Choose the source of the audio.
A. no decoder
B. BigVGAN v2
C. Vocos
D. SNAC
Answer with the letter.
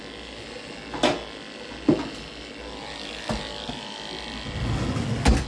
A